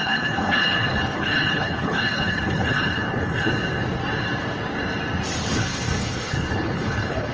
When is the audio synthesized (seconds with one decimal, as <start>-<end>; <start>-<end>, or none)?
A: 0.0-3.5; 5.5-7.3